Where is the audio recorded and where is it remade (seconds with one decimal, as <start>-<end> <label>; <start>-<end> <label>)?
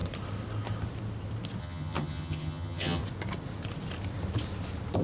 0.0-1.6 recorded; 1.6-3.0 remade; 3.0-5.0 recorded